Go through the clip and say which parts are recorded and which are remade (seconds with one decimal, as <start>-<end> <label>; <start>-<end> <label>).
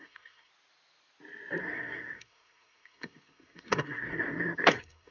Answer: 0.0-0.5 remade; 0.5-1.6 recorded; 1.6-5.1 remade